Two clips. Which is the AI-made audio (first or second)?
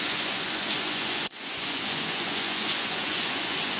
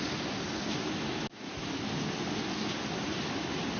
first